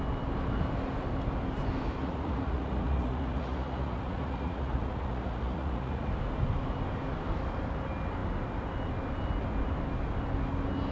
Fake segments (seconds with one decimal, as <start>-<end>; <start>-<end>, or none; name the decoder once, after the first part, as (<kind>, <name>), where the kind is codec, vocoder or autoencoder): 2.0-6.1 (vocoder, Vocos)